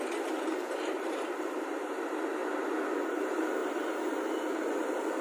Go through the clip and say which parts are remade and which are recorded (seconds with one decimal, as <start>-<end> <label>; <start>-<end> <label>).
0.0-2.4 remade; 2.4-3.1 recorded; 3.1-5.2 remade